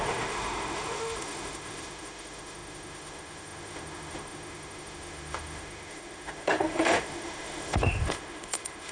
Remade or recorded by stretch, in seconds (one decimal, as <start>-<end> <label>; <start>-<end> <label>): 0.0-8.9 remade

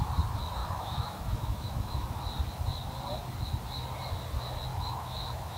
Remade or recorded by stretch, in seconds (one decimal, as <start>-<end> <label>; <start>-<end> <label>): 0.0-0.6 recorded; 0.6-2.2 remade; 2.2-4.7 recorded; 4.7-5.6 remade

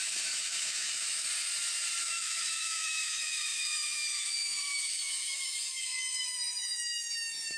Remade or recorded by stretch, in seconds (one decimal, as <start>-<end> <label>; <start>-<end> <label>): 0.0-1.3 remade; 1.3-2.0 recorded; 2.0-7.6 remade

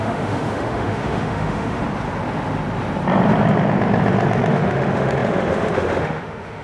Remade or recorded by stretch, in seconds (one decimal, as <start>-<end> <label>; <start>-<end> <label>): 0.0-1.8 remade; 1.8-4.5 recorded; 4.5-6.6 remade